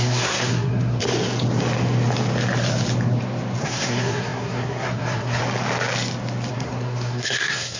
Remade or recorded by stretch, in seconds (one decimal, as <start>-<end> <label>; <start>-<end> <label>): 0.0-1.0 remade; 1.0-3.6 recorded; 3.6-5.4 remade; 5.4-6.5 recorded; 6.5-7.8 remade